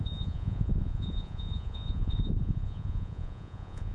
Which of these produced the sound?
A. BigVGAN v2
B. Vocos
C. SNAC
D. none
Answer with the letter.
B